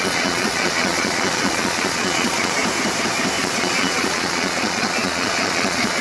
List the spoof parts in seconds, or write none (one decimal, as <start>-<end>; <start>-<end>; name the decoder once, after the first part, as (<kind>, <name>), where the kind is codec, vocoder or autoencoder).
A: 0.0-2.6 (vocoder, Vocos); 3.4-6.0